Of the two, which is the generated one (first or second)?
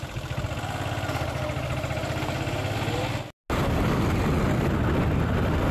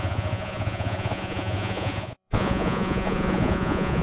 second